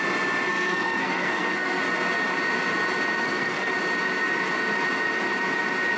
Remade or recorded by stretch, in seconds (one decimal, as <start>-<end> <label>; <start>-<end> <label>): 0.0-0.5 recorded; 0.5-1.8 remade; 1.8-3.2 recorded; 3.2-3.7 remade; 3.7-6.0 recorded